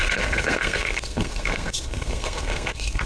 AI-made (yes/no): yes